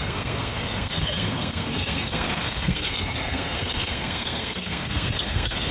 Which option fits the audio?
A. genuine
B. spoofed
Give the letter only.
B